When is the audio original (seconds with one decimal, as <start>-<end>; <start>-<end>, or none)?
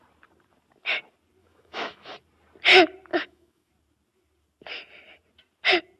0.0-1.4; 2.1-3.1; 3.7-6.0